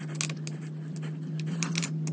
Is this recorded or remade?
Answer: recorded